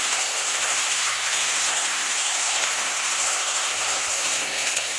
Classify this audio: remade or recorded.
remade